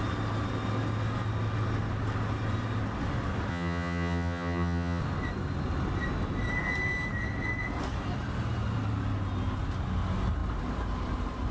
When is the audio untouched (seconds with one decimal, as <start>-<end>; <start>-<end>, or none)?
0.0-3.5; 5.0-11.5